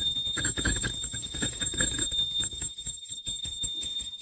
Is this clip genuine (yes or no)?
no